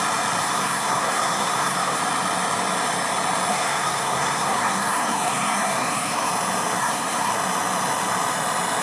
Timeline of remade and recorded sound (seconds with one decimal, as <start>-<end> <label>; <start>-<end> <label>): 0.0-0.4 recorded; 0.4-2.0 remade; 2.0-3.5 recorded; 3.5-6.3 remade; 6.3-6.8 recorded; 6.8-7.3 remade; 7.3-8.8 recorded